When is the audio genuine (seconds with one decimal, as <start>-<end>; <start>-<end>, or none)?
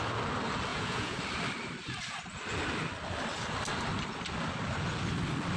0.0-0.7; 1.2-5.6